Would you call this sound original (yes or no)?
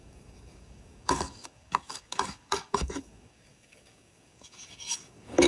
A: no